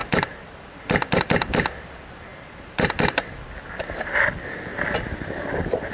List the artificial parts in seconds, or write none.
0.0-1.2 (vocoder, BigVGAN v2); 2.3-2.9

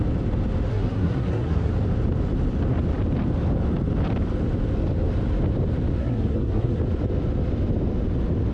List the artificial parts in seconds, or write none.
0.7-1.7 (codec, SNAC); 6.0-6.8

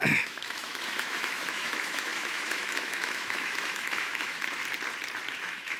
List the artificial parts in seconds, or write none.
0.0-4.6 (autoencoder, DAC-VAE); 5.3-5.8

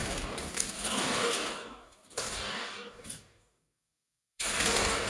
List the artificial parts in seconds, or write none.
0.0-5.1 (codec, DAC)